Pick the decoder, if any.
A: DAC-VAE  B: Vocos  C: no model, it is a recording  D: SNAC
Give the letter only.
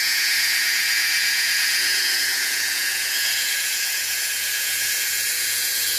B